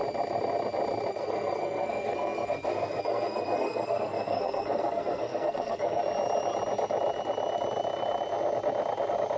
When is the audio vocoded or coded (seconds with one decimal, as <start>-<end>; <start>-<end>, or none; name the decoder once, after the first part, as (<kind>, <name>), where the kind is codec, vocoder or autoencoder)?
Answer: 1.1-6.0 (codec, SNAC)